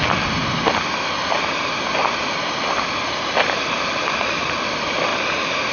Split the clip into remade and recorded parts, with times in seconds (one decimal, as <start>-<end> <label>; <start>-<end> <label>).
0.0-5.7 recorded